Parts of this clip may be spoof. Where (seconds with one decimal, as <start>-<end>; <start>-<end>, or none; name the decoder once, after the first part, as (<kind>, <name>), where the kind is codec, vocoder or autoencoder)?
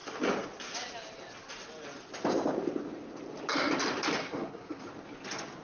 4.2-4.8 (codec, SNAC)